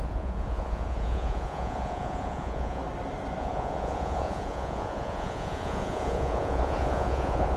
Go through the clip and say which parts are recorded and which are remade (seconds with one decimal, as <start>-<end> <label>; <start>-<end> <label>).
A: 0.0-2.8 remade; 2.8-3.4 recorded; 3.4-7.6 remade